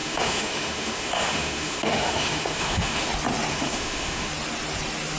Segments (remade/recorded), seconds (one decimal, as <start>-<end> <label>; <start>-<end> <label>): 0.0-3.1 remade; 3.1-3.5 recorded; 3.5-4.3 remade; 4.3-5.2 recorded